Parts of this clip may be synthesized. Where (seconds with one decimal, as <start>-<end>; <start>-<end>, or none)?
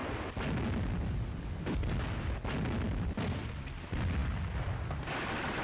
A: none